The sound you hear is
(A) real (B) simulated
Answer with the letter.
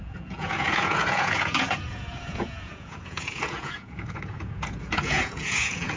B